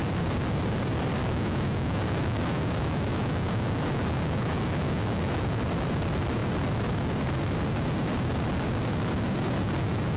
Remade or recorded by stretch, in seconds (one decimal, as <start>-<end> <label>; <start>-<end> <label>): 0.0-1.2 recorded; 1.2-5.6 remade; 5.6-10.2 recorded